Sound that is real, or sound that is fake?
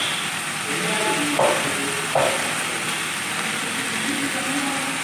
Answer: real